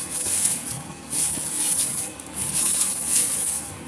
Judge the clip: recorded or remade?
remade